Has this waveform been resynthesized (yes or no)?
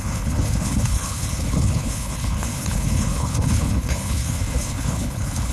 yes